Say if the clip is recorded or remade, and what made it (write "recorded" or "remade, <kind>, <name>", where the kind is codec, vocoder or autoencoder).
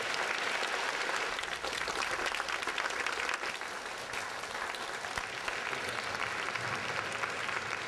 recorded